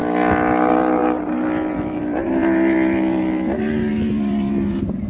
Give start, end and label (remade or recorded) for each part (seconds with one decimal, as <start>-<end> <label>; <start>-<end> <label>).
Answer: 0.0-0.6 recorded; 0.6-5.1 remade